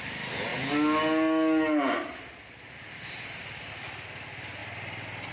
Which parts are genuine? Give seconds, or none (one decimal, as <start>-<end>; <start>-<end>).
0.0-4.6